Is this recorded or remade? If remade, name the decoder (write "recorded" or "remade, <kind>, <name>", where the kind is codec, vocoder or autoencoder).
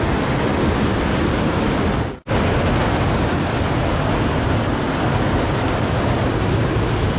recorded